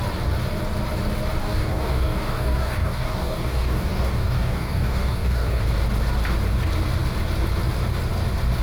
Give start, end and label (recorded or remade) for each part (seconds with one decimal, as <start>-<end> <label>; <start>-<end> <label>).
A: 0.0-1.4 recorded; 1.4-5.6 remade; 5.6-8.6 recorded